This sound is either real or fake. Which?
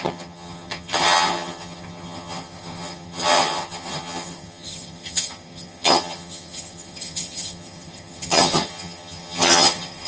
fake